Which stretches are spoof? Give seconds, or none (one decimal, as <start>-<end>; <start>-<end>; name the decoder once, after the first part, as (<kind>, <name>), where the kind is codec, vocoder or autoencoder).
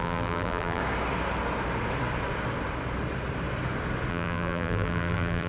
0.0-0.8 (vocoder, BigVGAN v2); 4.1-5.5